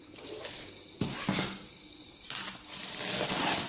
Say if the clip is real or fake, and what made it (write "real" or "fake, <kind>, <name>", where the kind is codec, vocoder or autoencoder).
real